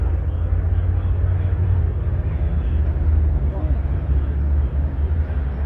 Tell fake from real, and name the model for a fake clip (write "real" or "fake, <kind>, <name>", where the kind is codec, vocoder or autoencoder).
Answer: real